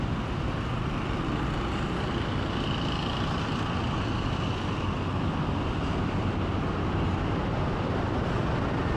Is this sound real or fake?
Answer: real